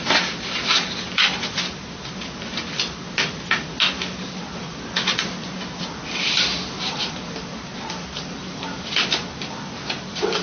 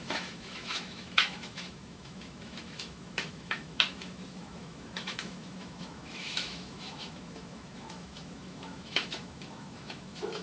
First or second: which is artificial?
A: second